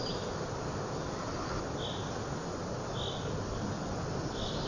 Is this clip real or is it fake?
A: real